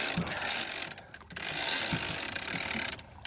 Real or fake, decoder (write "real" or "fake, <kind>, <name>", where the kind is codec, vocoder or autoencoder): real